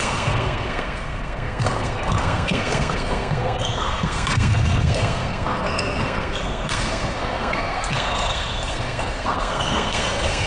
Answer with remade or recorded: remade